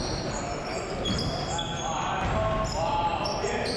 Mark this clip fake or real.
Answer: real